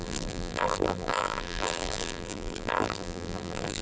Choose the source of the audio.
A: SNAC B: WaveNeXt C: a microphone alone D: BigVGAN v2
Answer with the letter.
D